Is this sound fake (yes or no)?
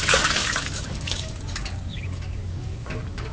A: yes